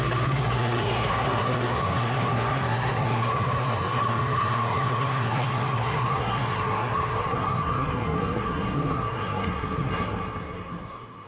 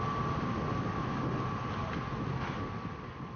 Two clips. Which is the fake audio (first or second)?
first